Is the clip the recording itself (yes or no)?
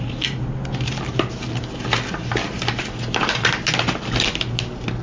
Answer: yes